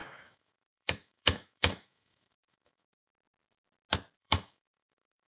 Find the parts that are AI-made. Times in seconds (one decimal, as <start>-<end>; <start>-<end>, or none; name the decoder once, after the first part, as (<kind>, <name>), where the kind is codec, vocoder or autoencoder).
0.0-3.1 (autoencoder, DAC-VAE); 4.2-5.3